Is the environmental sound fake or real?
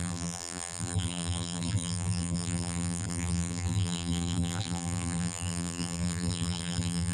fake